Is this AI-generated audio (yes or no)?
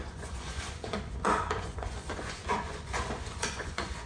yes